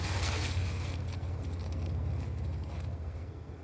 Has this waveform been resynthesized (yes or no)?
yes